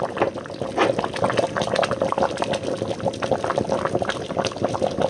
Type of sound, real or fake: real